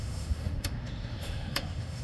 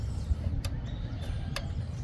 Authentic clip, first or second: second